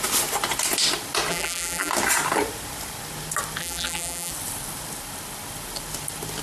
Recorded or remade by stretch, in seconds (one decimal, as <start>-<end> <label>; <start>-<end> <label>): 0.0-1.3 recorded; 1.3-1.9 remade; 1.9-3.6 recorded; 3.6-4.3 remade; 4.3-6.4 recorded